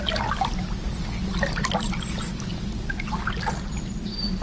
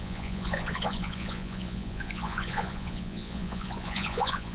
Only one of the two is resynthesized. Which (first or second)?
second